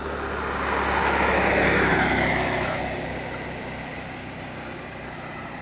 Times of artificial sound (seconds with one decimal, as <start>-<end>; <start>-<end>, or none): 1.0-2.8